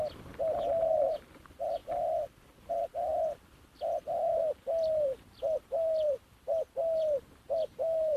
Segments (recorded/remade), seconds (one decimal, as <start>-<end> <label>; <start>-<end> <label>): 0.0-1.8 remade; 1.8-2.7 recorded; 2.7-3.1 remade; 3.1-4.3 recorded; 4.3-8.2 remade

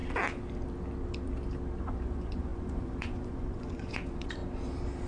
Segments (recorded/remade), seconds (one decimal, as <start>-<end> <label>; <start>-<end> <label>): 0.0-1.8 recorded; 1.8-4.4 remade; 4.4-5.1 recorded

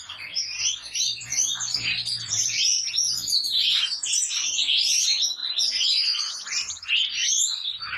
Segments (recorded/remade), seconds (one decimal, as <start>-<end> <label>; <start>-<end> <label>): 0.0-2.7 remade; 2.7-4.9 recorded; 4.9-5.4 remade; 5.4-6.5 recorded; 6.5-8.0 remade

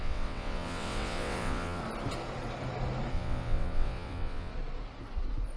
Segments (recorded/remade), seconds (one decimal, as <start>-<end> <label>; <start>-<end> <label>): 0.0-1.8 remade; 1.8-3.1 recorded; 3.1-4.5 remade; 4.5-5.6 recorded

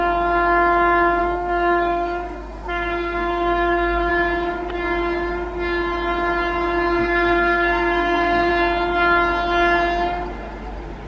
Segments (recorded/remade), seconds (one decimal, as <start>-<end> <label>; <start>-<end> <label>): 0.0-1.2 recorded; 1.2-4.1 remade; 4.1-7.0 recorded; 7.0-8.5 remade; 8.5-11.1 recorded